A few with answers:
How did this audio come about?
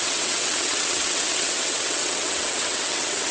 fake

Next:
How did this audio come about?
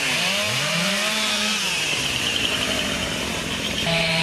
fake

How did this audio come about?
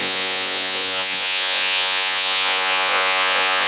fake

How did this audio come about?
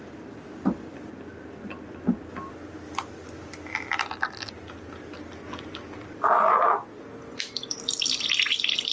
real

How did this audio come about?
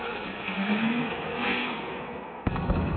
fake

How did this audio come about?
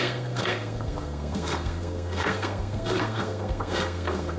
fake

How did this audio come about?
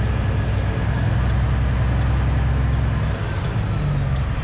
real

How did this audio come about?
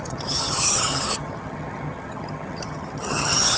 fake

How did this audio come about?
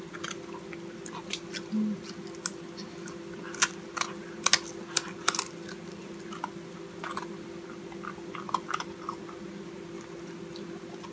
real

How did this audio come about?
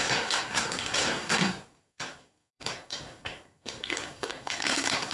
fake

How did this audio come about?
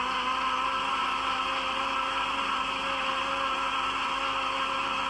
real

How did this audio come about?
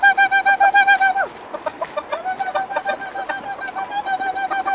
real